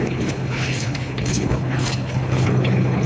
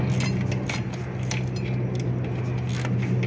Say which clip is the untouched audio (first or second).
second